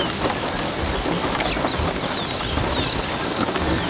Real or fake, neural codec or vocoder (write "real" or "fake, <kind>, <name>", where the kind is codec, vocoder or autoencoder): real